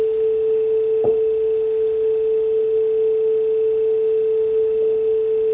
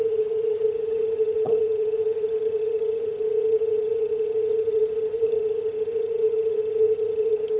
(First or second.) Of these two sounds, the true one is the first